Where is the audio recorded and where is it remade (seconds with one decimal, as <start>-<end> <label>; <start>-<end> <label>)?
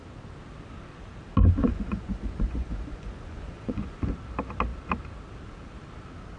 0.0-1.6 recorded; 1.6-4.1 remade; 4.1-6.4 recorded